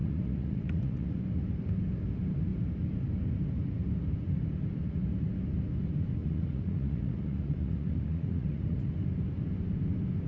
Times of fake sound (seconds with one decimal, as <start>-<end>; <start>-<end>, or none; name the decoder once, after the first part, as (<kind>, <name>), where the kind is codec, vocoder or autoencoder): 0.0-1.2 (vocoder, Vocos); 6.2-8.9